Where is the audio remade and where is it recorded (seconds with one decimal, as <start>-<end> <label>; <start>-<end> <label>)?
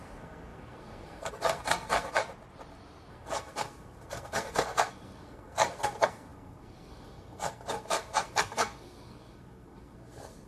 0.0-2.2 remade; 2.2-3.1 recorded; 3.1-10.5 remade